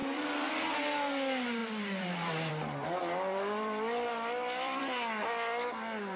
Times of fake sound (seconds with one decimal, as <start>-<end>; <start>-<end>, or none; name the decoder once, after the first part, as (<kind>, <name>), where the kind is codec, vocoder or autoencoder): 0.0-0.5 (vocoder, BigVGAN v2); 1.6-2.5; 3.0-4.8